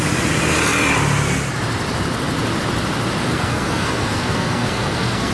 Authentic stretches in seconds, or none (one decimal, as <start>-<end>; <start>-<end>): 0.0-3.3